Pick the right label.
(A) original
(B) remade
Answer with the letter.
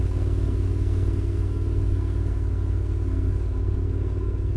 B